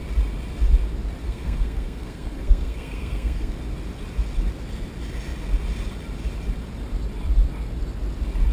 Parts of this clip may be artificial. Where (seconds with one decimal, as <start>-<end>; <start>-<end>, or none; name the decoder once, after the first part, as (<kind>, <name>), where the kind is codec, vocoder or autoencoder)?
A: 1.2-3.5 (codec, SNAC)